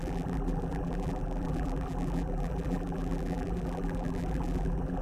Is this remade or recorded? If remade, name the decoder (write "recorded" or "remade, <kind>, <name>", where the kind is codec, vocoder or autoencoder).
remade, vocoder, BigVGAN v2